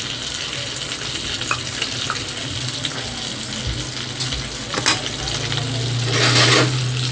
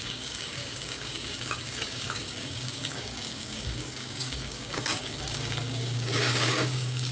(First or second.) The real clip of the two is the first